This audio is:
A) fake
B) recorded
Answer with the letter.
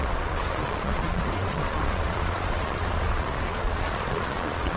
A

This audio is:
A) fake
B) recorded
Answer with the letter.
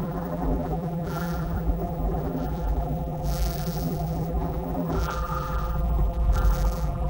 A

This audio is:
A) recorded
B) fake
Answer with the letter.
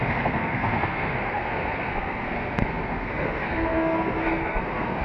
B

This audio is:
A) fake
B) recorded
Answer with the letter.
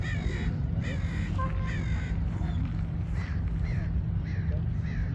B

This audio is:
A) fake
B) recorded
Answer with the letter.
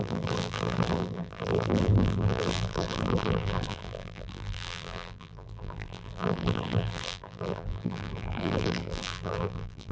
A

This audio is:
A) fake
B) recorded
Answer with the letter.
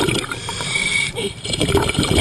A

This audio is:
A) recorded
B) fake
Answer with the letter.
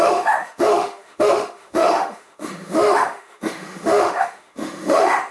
B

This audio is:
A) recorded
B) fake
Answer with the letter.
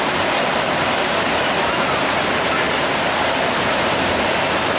A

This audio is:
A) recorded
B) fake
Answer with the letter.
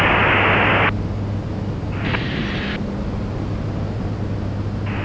A